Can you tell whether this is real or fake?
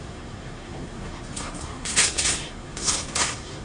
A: fake